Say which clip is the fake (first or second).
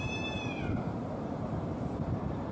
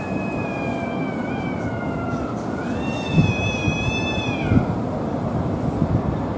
first